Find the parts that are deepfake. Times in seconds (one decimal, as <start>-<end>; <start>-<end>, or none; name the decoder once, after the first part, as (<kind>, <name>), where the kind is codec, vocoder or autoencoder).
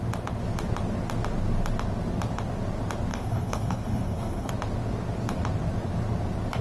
3.1-4.5 (codec, HILCodec)